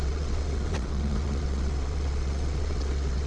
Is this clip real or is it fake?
fake